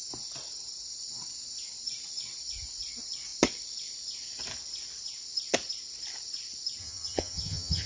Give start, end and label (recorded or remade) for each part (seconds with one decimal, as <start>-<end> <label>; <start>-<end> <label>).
0.0-6.8 recorded; 6.8-7.9 remade